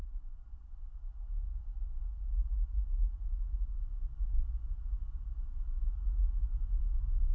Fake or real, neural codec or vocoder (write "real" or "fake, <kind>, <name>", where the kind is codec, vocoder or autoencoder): real